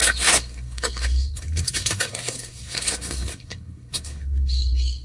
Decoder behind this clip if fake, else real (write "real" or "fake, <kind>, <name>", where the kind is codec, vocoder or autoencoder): fake, codec, SNAC